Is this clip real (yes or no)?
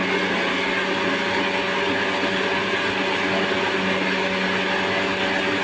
yes